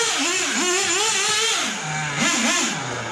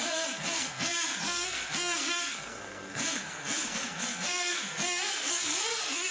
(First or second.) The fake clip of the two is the second